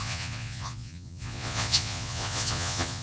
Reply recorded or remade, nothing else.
remade